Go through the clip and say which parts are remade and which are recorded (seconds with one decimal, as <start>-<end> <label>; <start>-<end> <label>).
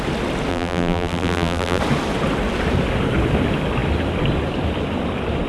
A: 0.0-0.5 recorded; 0.5-1.8 remade; 1.8-5.5 recorded